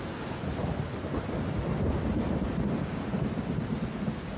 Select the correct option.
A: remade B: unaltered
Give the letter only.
B